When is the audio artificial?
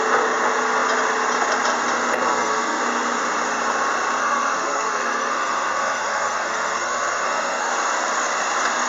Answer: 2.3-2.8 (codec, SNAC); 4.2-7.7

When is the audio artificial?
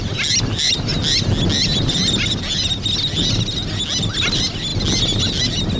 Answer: none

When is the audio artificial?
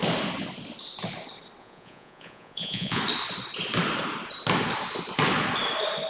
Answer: 1.6-3.0 (vocoder, Vocos)